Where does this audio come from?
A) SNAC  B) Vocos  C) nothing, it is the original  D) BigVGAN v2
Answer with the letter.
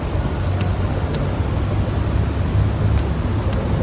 C